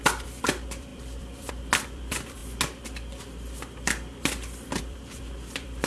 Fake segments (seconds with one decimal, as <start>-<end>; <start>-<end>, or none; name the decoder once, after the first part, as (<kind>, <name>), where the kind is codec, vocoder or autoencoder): 0.0-2.4 (vocoder, BigVGAN v2); 4.8-5.9